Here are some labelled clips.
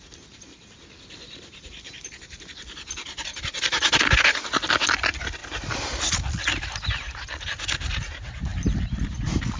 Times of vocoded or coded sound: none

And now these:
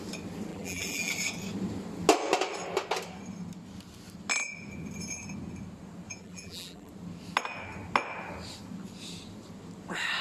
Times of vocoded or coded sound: 0.5-1.1 (vocoder, BigVGAN v2); 6.2-6.9

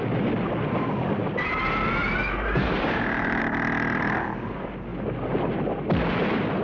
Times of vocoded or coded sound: 2.2-3.4 (vocoder, BigVGAN v2)

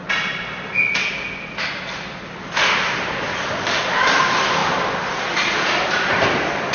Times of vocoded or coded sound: 0.0-1.0 (vocoder, BigVGAN v2); 3.6-4.6; 5.8-6.7

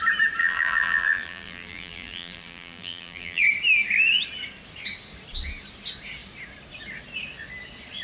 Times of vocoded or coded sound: 0.4-3.4 (vocoder, BigVGAN v2)